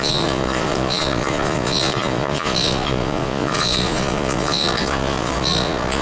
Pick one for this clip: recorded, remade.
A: remade